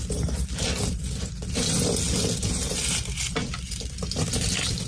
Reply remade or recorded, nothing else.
recorded